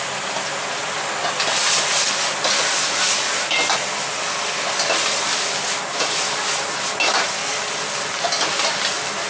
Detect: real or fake real